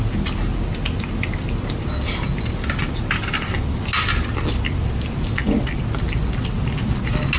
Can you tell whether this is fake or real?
real